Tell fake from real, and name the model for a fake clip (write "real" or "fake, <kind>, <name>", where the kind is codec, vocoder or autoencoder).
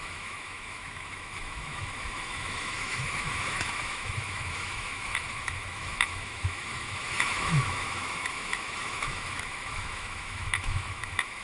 fake, autoencoder, DAC-VAE